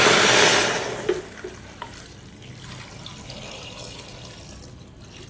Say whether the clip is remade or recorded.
recorded